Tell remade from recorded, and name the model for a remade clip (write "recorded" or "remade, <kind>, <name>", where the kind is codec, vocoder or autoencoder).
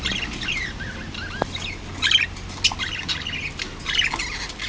recorded